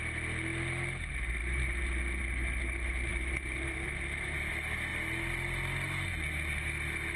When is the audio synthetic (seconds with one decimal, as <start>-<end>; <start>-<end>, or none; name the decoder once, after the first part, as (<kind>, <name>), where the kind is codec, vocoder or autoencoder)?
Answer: 3.1-4.5 (vocoder, BigVGAN v2)